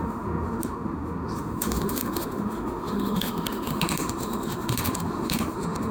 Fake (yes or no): yes